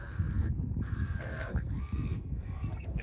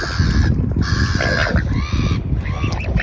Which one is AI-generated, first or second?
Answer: first